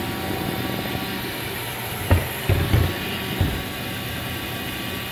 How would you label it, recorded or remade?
recorded